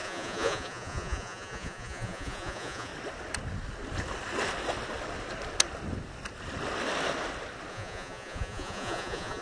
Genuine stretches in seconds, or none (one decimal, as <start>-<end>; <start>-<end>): 2.9-7.7

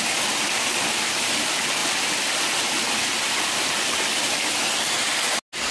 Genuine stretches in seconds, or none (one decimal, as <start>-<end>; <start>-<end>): 0.0-5.7

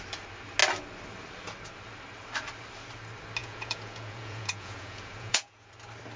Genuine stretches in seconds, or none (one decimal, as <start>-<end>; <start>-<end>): 0.0-3.4; 5.7-6.2

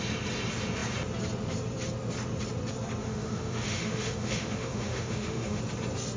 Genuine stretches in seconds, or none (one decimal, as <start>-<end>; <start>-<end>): 0.0-3.0; 5.6-6.2

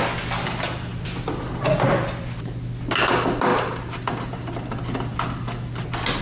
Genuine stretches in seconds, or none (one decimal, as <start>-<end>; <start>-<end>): 0.0-3.5; 4.7-6.2